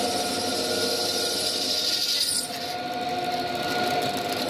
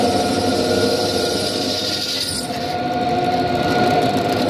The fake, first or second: second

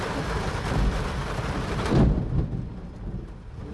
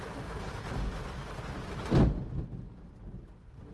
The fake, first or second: first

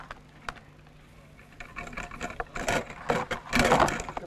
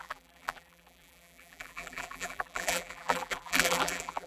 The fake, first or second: second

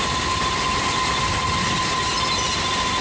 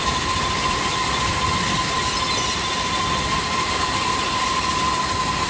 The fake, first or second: second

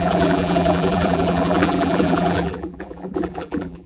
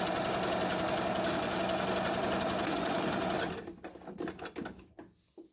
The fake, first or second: first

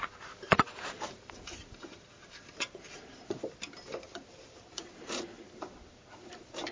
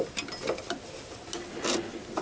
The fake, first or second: first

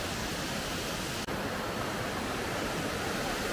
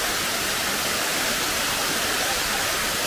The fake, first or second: second